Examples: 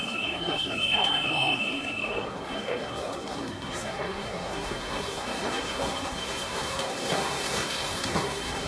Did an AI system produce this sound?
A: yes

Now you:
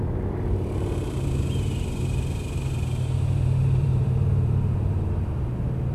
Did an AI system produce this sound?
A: yes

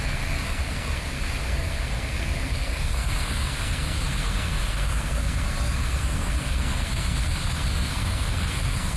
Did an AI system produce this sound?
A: yes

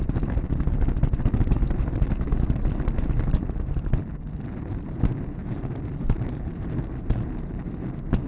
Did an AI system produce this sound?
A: yes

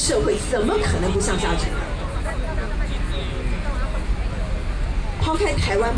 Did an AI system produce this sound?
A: no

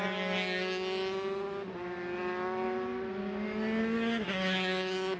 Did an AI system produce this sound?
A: no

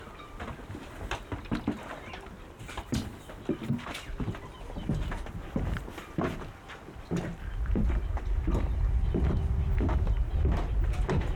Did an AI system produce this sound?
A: no